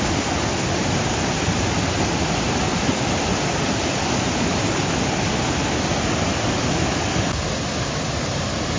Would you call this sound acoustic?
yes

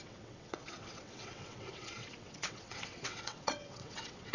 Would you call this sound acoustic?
no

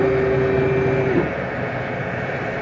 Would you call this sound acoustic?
yes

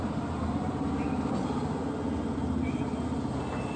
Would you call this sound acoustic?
yes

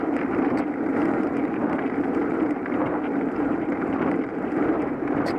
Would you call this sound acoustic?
no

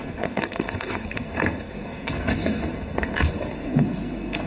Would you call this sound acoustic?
no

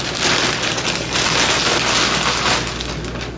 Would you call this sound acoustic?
yes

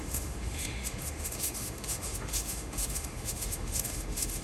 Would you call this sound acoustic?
no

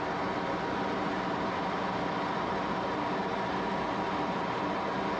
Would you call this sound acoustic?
yes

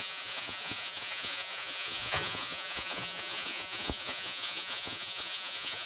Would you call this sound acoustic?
no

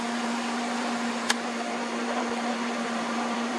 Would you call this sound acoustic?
no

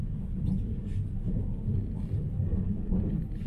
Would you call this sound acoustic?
yes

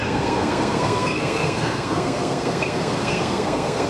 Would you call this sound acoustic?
no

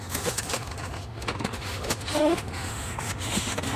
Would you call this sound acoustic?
no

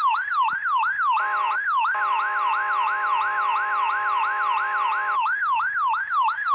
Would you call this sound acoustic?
yes